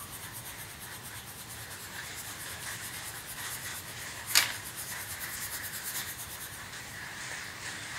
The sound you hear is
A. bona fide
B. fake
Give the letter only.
B